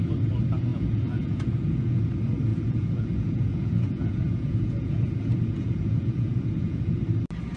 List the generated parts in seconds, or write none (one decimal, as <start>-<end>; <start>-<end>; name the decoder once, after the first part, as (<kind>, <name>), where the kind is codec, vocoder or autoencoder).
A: 0.7-2.0 (vocoder, Vocos); 2.5-7.0